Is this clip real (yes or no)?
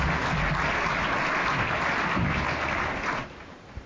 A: yes